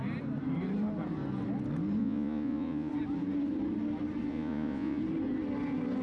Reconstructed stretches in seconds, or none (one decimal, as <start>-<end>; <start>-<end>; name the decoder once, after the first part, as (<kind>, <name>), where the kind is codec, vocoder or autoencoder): 2.0-2.9 (vocoder, Vocos); 4.3-5.0